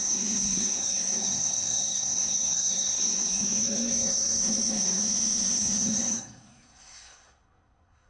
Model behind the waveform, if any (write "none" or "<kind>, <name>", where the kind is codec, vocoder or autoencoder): codec, SNAC